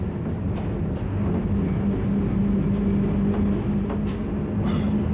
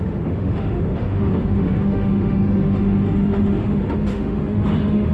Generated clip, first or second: second